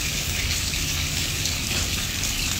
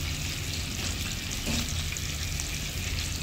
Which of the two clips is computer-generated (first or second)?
first